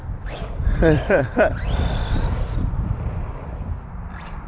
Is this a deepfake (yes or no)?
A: yes